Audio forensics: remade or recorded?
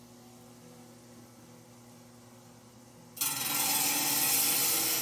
recorded